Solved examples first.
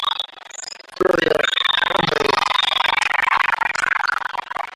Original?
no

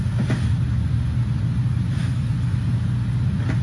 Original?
yes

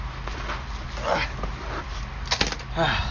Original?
yes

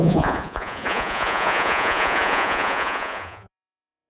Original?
no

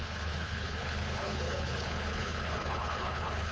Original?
no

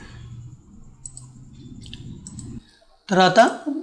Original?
yes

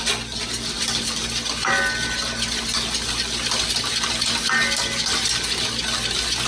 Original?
yes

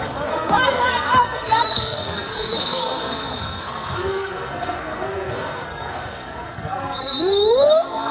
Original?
no